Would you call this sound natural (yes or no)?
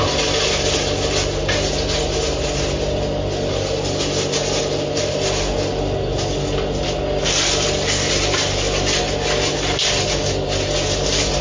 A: yes